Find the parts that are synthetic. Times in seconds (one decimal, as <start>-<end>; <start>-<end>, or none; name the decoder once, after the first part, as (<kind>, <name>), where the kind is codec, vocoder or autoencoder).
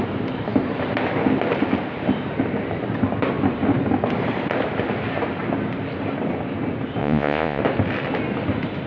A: 7.0-7.6 (vocoder, Vocos)